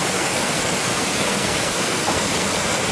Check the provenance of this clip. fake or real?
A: fake